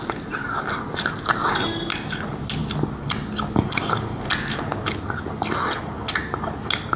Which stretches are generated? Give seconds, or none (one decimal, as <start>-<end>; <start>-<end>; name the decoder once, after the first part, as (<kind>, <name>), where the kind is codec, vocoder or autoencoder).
none